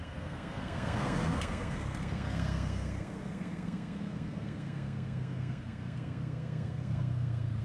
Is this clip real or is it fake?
fake